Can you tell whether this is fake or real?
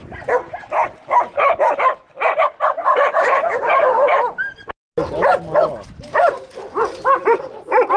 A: real